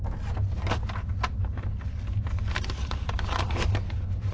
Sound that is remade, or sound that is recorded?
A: recorded